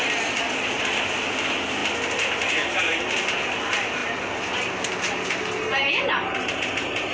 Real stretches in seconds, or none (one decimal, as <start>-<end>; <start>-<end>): 0.0-7.1